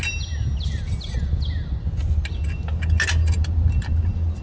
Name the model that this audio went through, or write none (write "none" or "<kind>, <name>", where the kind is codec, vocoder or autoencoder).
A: none